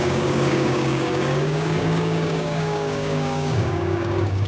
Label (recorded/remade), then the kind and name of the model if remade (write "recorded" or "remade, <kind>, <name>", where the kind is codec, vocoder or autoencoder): remade, codec, DAC